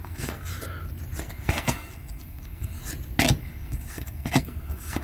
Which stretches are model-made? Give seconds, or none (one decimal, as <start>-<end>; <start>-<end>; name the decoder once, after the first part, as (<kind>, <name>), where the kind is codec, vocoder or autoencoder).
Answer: 0.0-0.5 (codec, SNAC); 1.2-2.8; 3.4-5.0